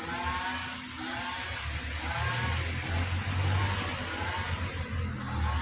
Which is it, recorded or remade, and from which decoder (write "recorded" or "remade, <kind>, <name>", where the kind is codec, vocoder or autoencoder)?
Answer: recorded